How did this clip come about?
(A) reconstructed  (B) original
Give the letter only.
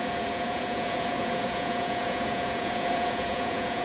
A